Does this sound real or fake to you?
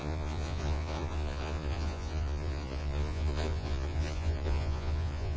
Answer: fake